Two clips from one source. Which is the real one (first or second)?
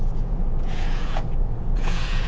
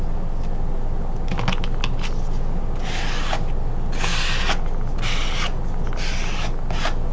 second